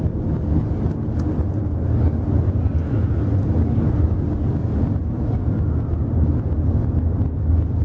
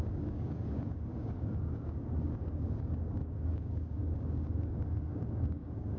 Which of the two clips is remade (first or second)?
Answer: second